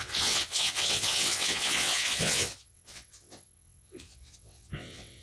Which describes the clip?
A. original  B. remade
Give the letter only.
B